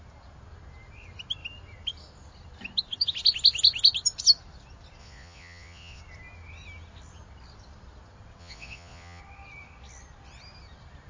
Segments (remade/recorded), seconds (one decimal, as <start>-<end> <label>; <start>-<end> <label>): 0.0-5.0 recorded; 5.0-6.0 remade; 6.0-8.4 recorded; 8.4-9.2 remade; 9.2-11.1 recorded